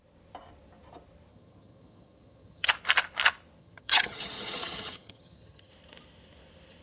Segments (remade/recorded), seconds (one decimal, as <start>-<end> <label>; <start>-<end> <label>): 0.0-1.3 recorded; 1.3-2.7 remade; 2.7-3.6 recorded; 3.6-5.7 remade; 5.7-6.8 recorded